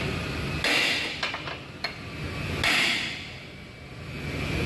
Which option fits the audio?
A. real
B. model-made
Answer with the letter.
A